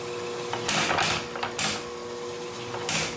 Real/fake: real